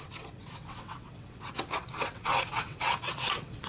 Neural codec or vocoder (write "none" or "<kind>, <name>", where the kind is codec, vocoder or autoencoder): vocoder, WaveNeXt